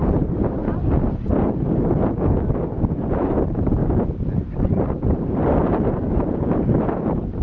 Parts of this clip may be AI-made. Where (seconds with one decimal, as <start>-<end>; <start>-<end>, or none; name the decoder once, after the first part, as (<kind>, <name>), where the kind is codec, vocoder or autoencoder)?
0.0-0.6 (vocoder, BigVGAN v2); 2.9-3.8; 4.6-5.4; 6.0-7.4